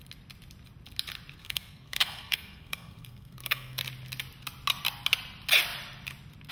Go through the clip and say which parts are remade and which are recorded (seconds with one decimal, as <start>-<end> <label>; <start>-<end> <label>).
0.0-1.4 recorded; 1.4-3.8 remade; 3.8-6.5 recorded